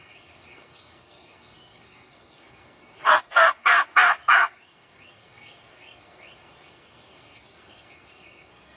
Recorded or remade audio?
remade